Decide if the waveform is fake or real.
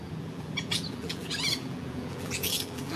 fake